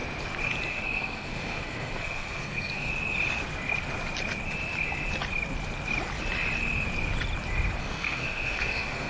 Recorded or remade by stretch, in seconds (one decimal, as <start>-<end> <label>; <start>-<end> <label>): 0.0-0.7 recorded; 0.7-2.9 remade; 2.9-7.8 recorded; 7.8-9.1 remade